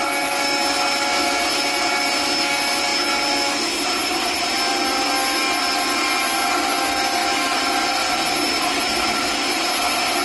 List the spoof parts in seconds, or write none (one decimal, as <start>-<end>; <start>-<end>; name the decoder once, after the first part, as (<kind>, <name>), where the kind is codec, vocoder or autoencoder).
none